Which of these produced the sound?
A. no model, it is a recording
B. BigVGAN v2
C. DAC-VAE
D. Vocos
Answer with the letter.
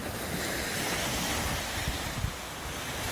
A